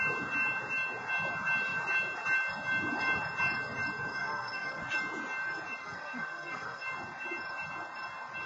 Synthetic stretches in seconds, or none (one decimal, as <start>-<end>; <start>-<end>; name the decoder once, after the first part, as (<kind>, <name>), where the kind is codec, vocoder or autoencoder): 4.2-4.8 (codec, SNAC); 5.8-6.8